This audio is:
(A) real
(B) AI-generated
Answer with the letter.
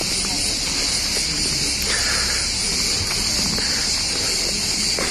A